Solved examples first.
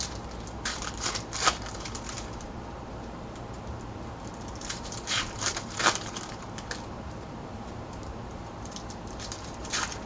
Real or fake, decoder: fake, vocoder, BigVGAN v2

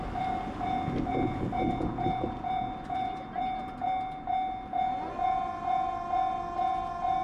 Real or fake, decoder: real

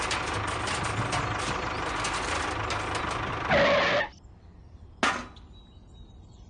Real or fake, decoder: real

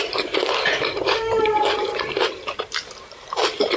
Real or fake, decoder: fake, vocoder, BigVGAN v2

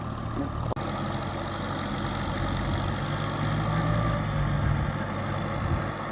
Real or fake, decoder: real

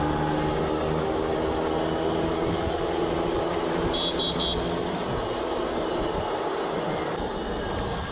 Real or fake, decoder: real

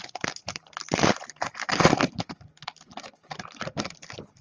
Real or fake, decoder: fake, vocoder, BigVGAN v2